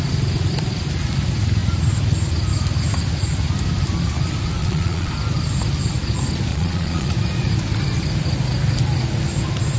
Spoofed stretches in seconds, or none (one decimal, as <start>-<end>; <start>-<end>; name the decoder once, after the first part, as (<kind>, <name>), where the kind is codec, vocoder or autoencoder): 4.6-5.1 (vocoder, Vocos); 6.5-7.1